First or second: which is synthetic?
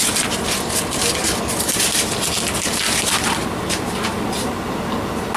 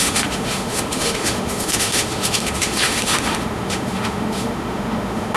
second